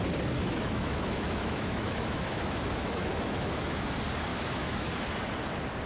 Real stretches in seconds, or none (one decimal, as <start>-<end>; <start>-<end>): 0.0-0.4; 3.9-4.3; 4.9-5.9